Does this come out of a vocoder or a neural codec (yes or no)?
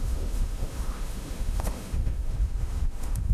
yes